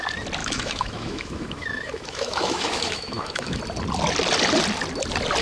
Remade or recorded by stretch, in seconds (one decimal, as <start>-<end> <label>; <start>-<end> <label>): 0.0-0.4 recorded; 0.4-3.6 remade; 3.6-5.4 recorded